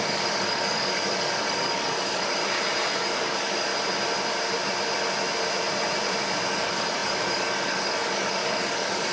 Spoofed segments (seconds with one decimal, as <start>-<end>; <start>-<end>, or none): 0.0-2.4; 3.0-3.7; 6.5-9.1